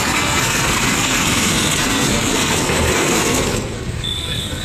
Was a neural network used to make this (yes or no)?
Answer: yes